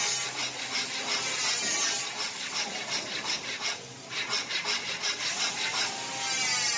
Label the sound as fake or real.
real